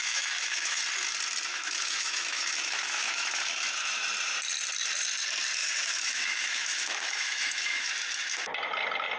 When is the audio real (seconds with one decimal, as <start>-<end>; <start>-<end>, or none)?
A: 0.8-1.5; 3.4-5.6; 7.9-9.2